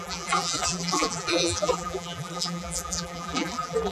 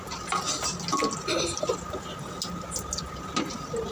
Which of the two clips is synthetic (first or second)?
first